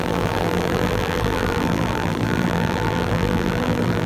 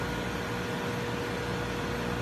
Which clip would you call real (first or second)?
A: second